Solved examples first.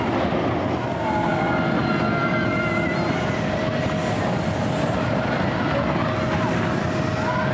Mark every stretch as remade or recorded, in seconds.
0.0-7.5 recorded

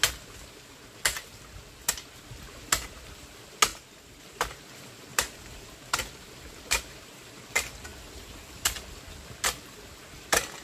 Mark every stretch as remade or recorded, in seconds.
0.0-3.7 recorded; 3.7-4.2 remade; 4.2-5.1 recorded; 5.1-6.0 remade; 6.0-7.9 recorded; 7.9-9.0 remade; 9.0-10.6 recorded